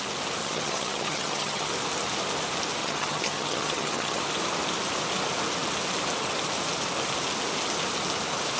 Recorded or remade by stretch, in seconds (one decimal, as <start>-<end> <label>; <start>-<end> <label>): 0.0-0.4 recorded; 0.4-1.7 remade; 1.7-2.8 recorded; 2.8-4.2 remade; 4.2-8.6 recorded

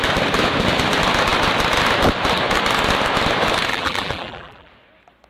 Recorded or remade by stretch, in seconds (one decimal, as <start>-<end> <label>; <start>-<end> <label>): 0.0-3.7 recorded; 3.7-4.7 remade; 4.7-5.3 recorded

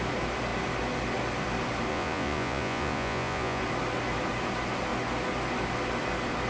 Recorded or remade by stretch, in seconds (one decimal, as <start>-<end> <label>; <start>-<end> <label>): 0.0-1.9 recorded; 1.9-3.6 remade; 3.6-6.5 recorded